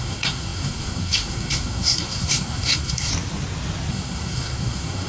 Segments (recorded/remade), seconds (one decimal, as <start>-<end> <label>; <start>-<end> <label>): 0.0-3.1 remade; 3.1-3.9 recorded; 3.9-5.1 remade